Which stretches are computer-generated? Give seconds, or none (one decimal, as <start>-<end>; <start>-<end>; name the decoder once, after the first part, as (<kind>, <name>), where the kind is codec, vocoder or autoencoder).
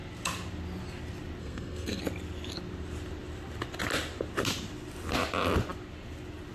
1.4-2.0 (codec, SNAC)